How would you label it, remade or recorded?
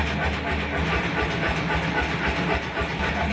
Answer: recorded